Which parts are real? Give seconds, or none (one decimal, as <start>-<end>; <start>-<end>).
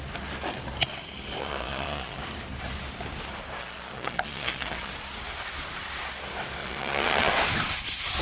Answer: 0.0-1.4; 2.2-3.6; 4.9-6.6; 7.3-8.2